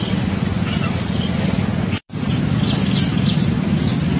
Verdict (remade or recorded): remade